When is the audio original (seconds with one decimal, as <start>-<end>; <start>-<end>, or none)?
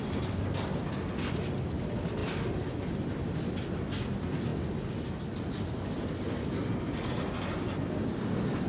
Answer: 0.0-8.7